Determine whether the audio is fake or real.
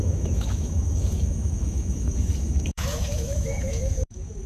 fake